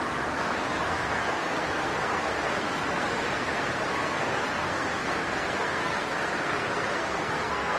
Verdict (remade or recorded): remade